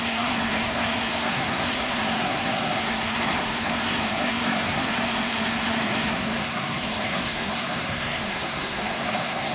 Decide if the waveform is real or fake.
fake